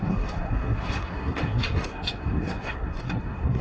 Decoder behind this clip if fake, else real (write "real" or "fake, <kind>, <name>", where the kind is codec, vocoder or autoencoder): fake, codec, SNAC